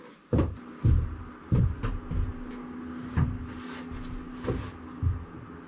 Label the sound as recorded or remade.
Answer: recorded